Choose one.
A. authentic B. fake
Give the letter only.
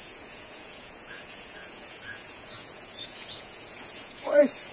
B